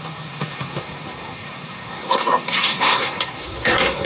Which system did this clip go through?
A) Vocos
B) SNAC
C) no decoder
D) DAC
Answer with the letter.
B